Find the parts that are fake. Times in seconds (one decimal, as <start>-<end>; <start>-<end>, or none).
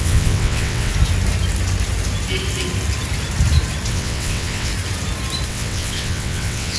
0.0-0.9; 3.9-4.7; 5.5-6.8